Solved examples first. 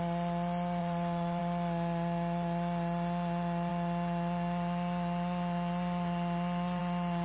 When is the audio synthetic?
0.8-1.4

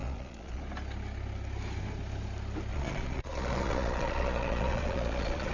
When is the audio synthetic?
0.0-0.6; 2.7-5.5

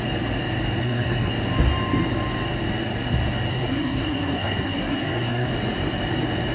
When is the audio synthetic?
0.8-1.3; 3.5-5.5

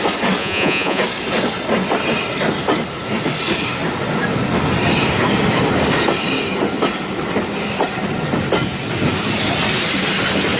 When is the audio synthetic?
0.4-1.0

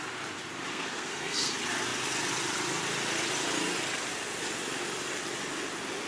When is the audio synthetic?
0.7-1.5

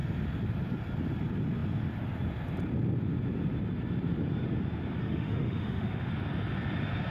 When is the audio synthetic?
5.0-6.1